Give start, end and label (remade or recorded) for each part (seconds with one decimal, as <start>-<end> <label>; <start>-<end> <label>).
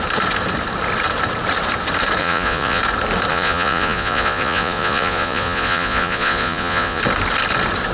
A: 0.0-2.2 recorded; 2.2-2.8 remade; 2.8-3.3 recorded; 3.3-7.0 remade; 7.0-7.9 recorded